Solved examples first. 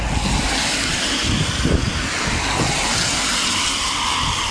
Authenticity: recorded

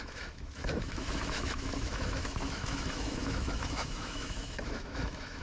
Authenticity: remade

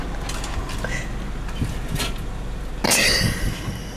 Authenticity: recorded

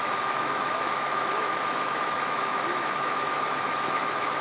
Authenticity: remade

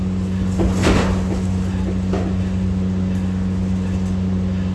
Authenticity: recorded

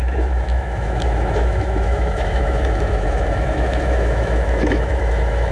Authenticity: remade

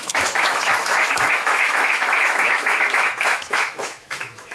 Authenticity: remade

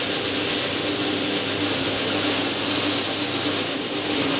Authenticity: recorded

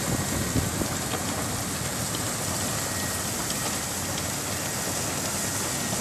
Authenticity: recorded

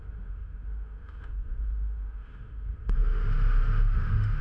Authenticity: remade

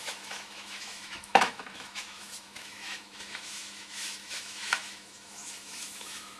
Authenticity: remade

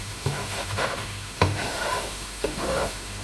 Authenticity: remade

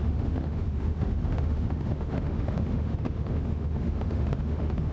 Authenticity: remade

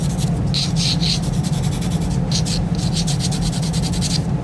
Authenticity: recorded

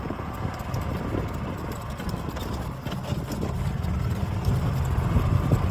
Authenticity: recorded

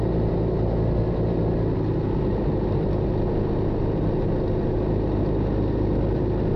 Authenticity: recorded